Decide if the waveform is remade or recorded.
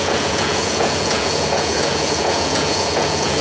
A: remade